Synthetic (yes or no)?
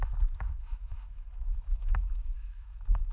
yes